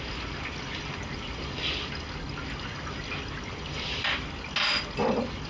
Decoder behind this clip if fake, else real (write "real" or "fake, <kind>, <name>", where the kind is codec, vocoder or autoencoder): real